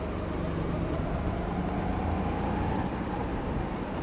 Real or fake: real